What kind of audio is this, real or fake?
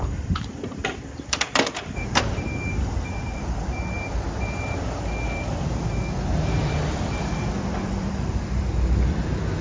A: fake